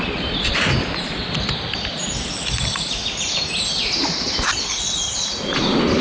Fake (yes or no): no